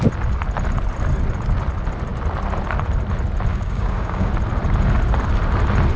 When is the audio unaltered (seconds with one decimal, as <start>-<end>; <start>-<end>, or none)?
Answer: 0.0-3.5; 4.3-6.0